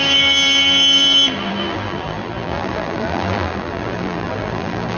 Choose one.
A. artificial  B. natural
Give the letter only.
A